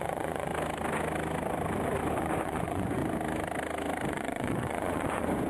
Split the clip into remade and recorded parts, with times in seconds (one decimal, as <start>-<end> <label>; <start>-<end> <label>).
0.0-0.5 remade; 0.5-2.1 recorded; 2.1-3.0 remade; 3.0-4.1 recorded; 4.1-5.5 remade

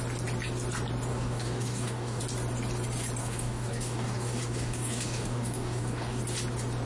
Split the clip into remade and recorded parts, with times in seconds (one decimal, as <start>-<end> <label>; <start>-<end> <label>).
0.0-1.1 recorded; 1.1-2.2 remade; 2.2-3.2 recorded; 3.2-6.2 remade; 6.2-6.9 recorded

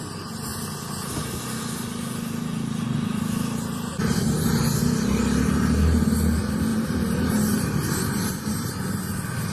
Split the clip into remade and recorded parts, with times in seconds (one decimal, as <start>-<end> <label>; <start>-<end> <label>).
0.0-6.7 recorded; 6.7-8.7 remade; 8.7-9.5 recorded

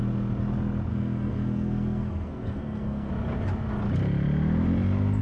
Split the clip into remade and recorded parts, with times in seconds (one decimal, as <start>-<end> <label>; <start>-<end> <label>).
0.0-0.9 recorded; 0.9-3.1 remade; 3.1-5.2 recorded

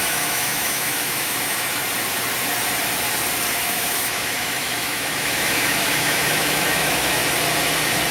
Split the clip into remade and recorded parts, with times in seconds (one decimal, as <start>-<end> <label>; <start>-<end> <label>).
0.0-1.8 remade; 1.8-3.5 recorded; 3.5-7.2 remade; 7.2-8.1 recorded